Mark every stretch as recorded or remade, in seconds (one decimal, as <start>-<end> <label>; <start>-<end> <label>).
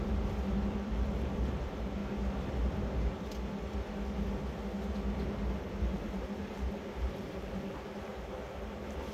0.0-2.0 remade; 2.0-5.8 recorded; 5.8-9.1 remade